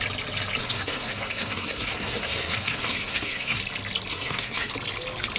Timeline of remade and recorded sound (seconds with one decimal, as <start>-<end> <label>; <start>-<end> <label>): 0.0-0.6 recorded; 0.6-3.6 remade; 3.6-4.1 recorded; 4.1-4.7 remade; 4.7-5.4 recorded